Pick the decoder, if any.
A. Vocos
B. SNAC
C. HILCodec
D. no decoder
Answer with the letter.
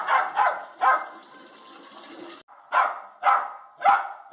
D